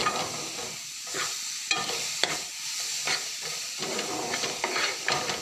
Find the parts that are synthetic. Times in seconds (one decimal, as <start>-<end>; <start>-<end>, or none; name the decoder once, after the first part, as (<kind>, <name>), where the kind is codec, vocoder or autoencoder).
1.0-2.9 (vocoder, BigVGAN v2); 3.5-5.4